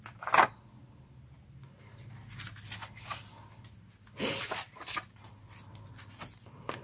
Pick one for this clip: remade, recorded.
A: recorded